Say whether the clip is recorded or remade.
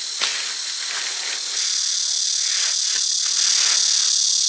recorded